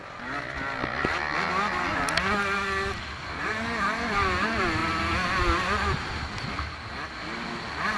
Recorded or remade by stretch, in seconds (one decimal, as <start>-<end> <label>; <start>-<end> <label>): 0.0-8.0 recorded

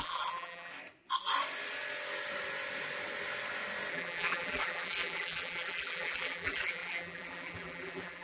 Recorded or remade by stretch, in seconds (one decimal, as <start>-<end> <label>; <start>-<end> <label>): 0.0-0.7 remade; 0.7-3.9 recorded; 3.9-8.2 remade

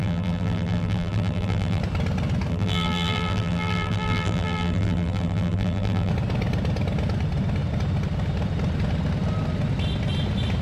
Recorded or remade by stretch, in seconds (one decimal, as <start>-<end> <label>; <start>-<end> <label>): 0.0-1.8 remade; 1.8-2.5 recorded; 2.5-6.1 remade; 6.1-10.6 recorded

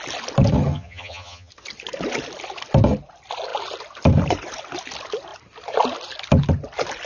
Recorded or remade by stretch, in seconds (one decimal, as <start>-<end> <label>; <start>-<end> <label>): 0.0-0.7 recorded; 0.7-1.5 remade; 1.5-7.1 recorded

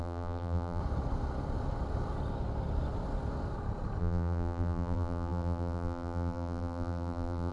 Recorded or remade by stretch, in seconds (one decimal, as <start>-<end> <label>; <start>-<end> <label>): 0.0-0.8 remade; 0.8-4.0 recorded; 4.0-7.5 remade